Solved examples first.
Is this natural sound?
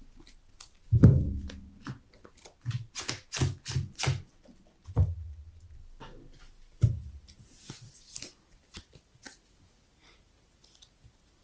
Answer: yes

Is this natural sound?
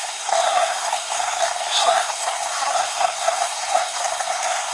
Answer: no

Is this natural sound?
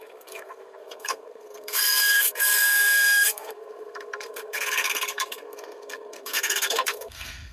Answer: no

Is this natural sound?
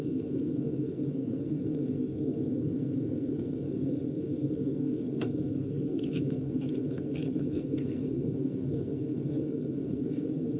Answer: no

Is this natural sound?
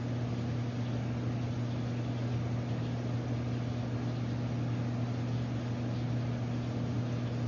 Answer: yes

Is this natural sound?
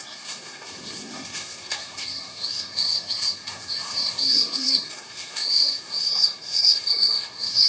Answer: no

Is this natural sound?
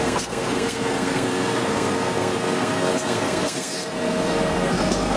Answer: no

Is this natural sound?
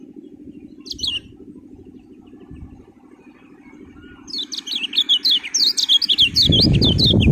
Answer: yes